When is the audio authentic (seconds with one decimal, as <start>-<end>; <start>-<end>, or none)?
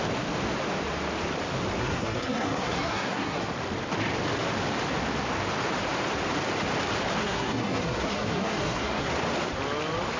0.0-1.8; 3.5-7.2; 9.1-10.2